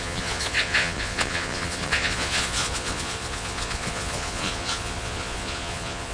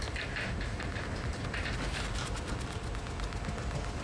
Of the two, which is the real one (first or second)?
second